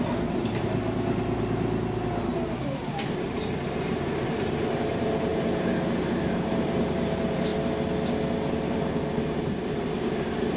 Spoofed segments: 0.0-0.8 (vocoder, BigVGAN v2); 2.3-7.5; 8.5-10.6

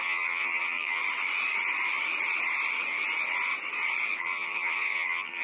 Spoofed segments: 0.0-1.0 (vocoder, HiFi-GAN); 4.2-5.4